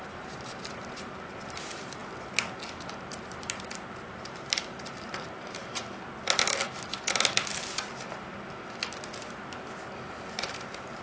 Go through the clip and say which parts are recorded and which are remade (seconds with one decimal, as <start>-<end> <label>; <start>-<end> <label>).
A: 0.0-2.0 remade; 2.0-2.9 recorded; 2.9-5.8 remade; 5.8-10.0 recorded; 10.0-11.0 remade